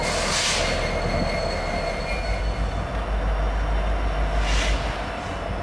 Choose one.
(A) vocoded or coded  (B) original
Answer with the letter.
B